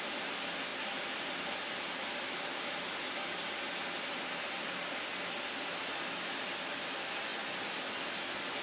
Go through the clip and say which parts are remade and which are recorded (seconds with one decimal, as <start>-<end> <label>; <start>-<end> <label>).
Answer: 0.0-2.0 recorded; 2.0-6.3 remade; 6.3-8.6 recorded